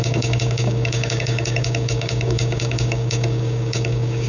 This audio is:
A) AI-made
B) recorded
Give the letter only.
A